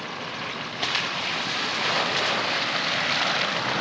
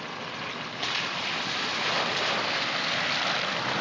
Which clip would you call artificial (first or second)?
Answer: first